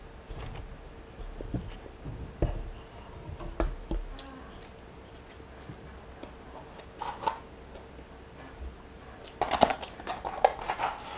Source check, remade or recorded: recorded